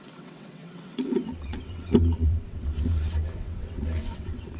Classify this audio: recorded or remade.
remade